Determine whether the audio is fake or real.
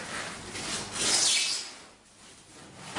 real